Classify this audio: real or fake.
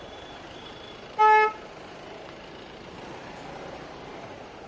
fake